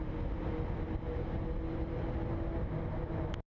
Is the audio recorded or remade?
recorded